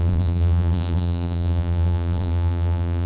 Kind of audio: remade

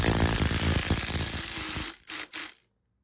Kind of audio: recorded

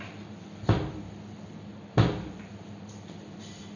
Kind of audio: remade